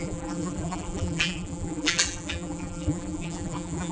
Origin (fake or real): fake